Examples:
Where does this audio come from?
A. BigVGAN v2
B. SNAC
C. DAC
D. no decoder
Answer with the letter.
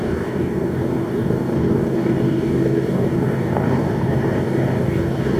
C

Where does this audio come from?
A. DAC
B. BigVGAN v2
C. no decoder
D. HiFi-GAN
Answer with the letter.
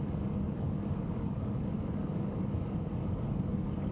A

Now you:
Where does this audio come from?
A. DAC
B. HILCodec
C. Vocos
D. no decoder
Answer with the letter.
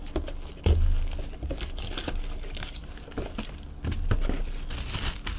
D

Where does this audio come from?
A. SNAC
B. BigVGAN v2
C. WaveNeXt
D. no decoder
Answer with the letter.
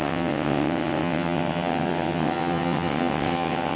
C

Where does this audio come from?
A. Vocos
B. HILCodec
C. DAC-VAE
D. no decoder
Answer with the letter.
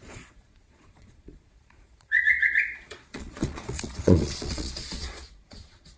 A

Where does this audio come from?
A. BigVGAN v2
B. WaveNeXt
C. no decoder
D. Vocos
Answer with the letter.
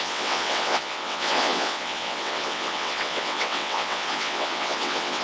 B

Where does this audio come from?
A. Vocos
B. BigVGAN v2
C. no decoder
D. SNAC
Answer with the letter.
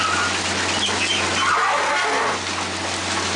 C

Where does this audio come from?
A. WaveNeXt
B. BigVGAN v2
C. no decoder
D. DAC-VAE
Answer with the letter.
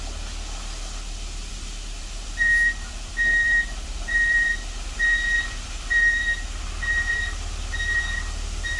B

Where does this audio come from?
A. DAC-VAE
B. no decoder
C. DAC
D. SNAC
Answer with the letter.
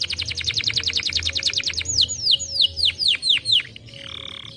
B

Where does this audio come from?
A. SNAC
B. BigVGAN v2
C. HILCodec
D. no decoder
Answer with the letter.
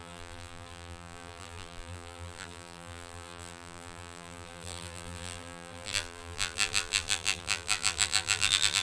B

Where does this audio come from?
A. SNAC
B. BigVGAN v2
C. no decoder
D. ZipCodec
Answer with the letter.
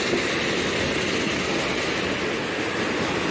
C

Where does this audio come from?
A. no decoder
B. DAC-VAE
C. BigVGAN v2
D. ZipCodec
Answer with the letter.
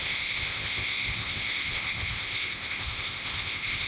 D